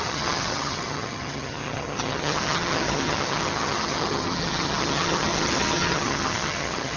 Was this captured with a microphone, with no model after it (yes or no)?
no